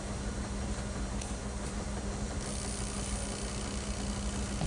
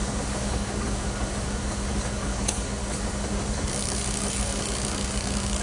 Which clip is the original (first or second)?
first